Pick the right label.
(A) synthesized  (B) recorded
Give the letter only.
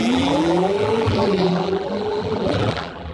A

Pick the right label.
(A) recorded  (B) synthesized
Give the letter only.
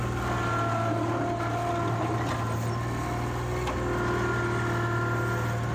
A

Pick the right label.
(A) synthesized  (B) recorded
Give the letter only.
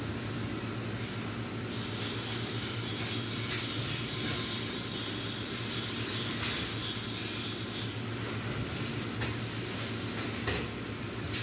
B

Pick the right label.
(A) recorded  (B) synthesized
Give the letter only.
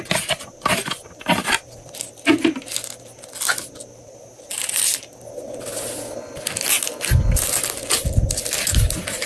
A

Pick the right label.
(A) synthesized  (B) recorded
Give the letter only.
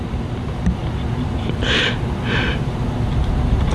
B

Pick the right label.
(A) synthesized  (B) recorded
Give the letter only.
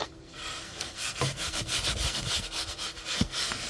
A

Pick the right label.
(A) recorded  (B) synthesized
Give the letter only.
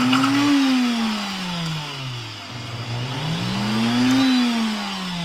A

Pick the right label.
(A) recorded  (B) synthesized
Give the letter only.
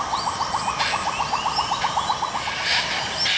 A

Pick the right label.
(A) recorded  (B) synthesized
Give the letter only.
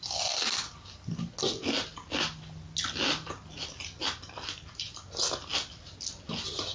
A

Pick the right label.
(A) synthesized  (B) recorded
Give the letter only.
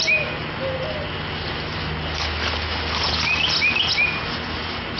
B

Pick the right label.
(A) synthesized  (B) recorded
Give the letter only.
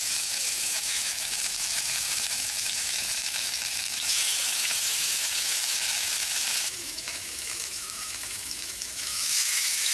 A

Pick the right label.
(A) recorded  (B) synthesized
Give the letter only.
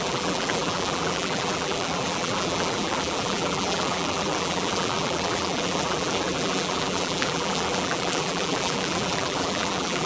B